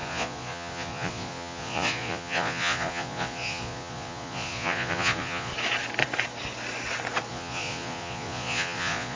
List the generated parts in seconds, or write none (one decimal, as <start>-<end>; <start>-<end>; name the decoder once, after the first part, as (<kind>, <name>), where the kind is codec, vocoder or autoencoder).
0.0-5.5 (vocoder, Vocos); 7.3-9.2